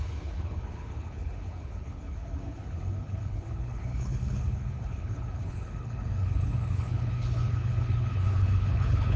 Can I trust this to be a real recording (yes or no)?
no